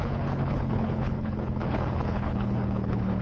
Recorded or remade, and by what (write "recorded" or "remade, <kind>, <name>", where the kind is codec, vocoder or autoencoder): remade, codec, HILCodec